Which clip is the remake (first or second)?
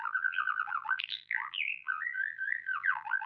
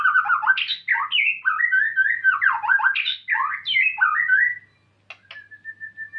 first